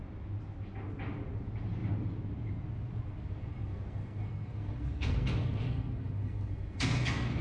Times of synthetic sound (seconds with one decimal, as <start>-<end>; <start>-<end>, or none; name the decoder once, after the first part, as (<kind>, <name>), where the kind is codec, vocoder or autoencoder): 3.4-7.4 (codec, SNAC)